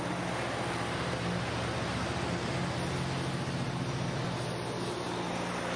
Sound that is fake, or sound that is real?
real